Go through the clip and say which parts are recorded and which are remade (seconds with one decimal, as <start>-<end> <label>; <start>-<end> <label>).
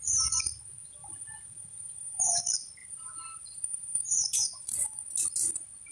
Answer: 0.0-1.0 recorded; 1.0-2.3 remade; 2.3-2.8 recorded; 2.8-4.8 remade; 4.8-5.9 recorded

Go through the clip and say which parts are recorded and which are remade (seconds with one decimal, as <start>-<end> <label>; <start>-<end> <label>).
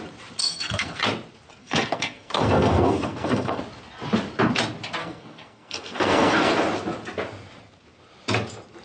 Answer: 0.0-0.4 recorded; 0.4-1.0 remade; 1.0-1.6 recorded; 1.6-3.6 remade; 3.6-5.0 recorded; 5.0-6.5 remade; 6.5-8.8 recorded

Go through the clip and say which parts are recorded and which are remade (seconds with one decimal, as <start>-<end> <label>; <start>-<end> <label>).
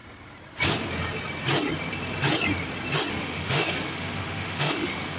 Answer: 0.0-3.1 recorded; 3.1-5.2 remade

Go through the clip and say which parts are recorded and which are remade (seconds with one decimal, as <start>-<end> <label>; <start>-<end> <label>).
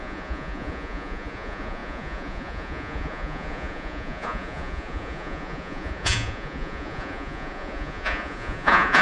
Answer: 0.0-9.0 remade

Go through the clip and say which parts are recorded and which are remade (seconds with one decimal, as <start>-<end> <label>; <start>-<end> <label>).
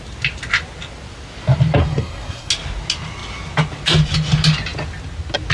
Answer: 0.0-1.8 recorded; 1.8-2.5 remade; 2.5-5.5 recorded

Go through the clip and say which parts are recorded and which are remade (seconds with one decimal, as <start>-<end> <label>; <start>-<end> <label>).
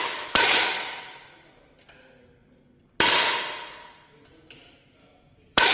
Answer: 0.0-0.7 remade; 0.7-5.0 recorded; 5.0-5.7 remade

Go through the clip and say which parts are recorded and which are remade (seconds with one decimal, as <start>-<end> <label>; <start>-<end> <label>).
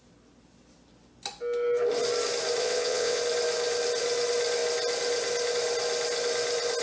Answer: 0.0-2.6 recorded; 2.6-3.2 remade; 3.2-6.8 recorded